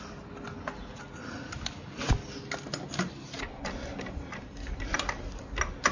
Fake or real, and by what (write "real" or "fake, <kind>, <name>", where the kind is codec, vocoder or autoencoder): real